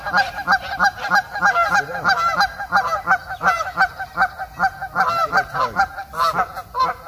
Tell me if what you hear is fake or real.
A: real